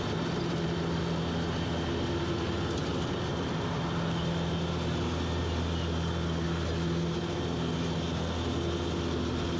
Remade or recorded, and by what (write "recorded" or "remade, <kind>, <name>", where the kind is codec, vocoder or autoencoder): recorded